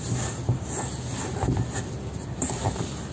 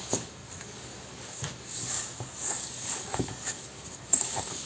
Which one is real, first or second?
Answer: first